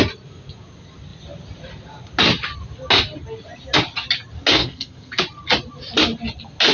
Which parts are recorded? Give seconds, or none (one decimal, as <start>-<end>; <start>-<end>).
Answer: 0.0-4.6; 5.2-6.7

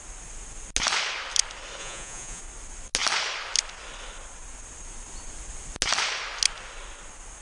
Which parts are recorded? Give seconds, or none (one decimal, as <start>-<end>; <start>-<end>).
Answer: 0.0-1.8; 2.4-7.4

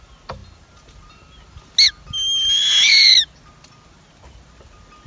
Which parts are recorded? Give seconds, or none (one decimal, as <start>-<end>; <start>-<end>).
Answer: 0.0-5.1

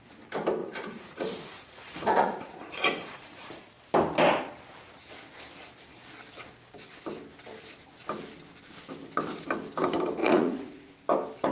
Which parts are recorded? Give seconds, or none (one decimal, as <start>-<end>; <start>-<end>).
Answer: 0.0-0.6; 3.5-10.2; 10.9-11.5

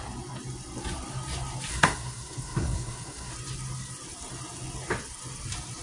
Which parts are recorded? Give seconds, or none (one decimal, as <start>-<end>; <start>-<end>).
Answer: 0.0-1.7; 3.3-5.8

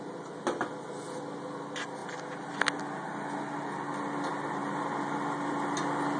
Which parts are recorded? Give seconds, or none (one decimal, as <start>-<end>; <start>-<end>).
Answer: 0.0-6.2